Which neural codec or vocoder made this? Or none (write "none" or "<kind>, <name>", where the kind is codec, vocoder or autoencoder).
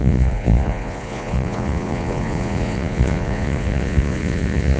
vocoder, Vocos